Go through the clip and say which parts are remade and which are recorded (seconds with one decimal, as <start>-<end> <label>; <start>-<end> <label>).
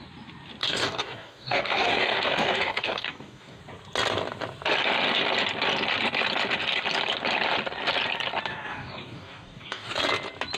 0.0-0.6 recorded; 0.6-3.6 remade; 3.6-8.5 recorded; 8.5-10.0 remade; 10.0-10.6 recorded